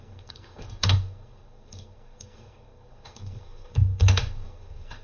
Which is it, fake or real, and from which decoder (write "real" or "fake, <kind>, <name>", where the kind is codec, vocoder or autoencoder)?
fake, codec, SNAC